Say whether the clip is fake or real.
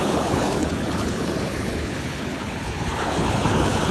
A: fake